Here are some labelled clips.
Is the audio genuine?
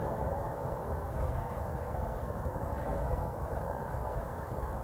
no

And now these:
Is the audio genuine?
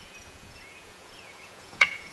no